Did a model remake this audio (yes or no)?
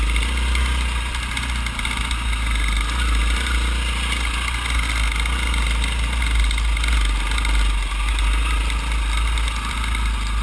no